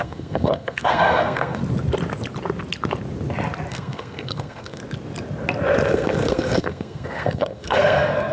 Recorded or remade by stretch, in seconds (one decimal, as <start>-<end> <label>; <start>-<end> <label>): 0.0-1.6 remade; 1.6-3.7 recorded; 3.7-4.8 remade; 4.8-5.9 recorded; 5.9-8.3 remade